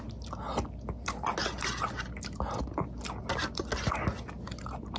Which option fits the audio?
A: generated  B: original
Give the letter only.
B